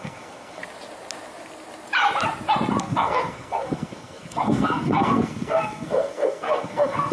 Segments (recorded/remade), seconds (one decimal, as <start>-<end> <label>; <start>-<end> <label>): 0.0-0.6 remade; 0.6-2.8 recorded; 2.8-7.1 remade